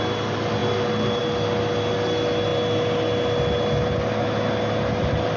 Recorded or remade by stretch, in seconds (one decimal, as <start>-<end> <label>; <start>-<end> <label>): 0.0-5.4 recorded